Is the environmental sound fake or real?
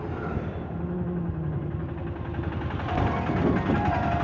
real